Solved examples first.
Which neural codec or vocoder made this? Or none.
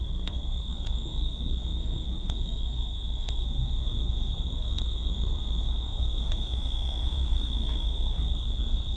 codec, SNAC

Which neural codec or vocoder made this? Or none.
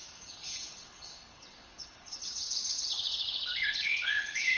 codec, HILCodec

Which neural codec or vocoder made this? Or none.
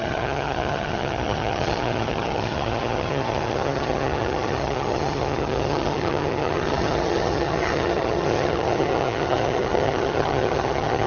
vocoder, HiFi-GAN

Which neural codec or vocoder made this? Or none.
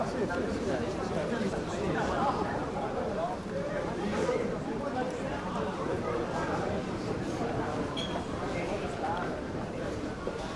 vocoder, BigVGAN v2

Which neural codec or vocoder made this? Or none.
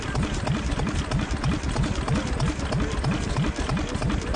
none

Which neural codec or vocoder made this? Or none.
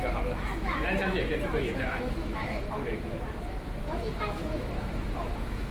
autoencoder, DAC-VAE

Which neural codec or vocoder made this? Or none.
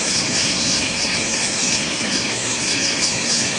codec, SNAC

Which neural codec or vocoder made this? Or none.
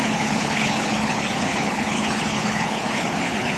codec, HILCodec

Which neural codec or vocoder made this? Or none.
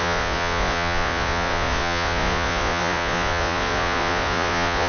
vocoder, Vocos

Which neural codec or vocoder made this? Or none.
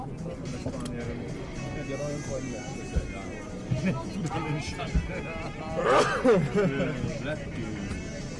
none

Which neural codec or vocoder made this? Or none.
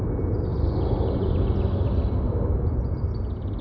none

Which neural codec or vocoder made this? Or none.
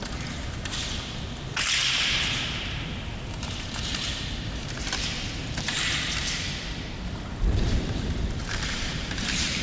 vocoder, BigVGAN v2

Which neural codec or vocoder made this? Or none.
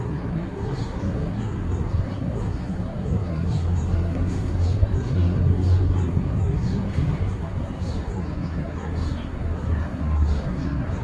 codec, SNAC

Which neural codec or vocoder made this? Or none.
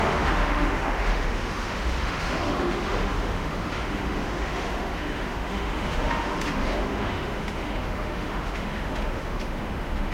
autoencoder, DAC-VAE